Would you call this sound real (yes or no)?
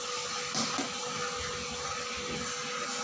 yes